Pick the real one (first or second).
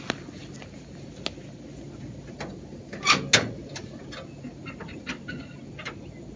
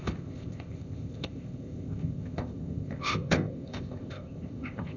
first